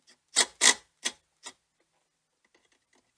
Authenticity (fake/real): real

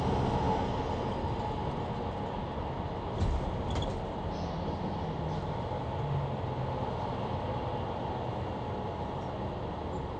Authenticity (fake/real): real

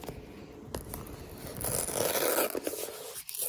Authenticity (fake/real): real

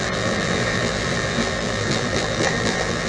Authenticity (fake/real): fake